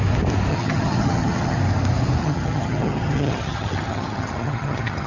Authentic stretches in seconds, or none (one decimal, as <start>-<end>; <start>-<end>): 0.0-0.5; 1.6-2.2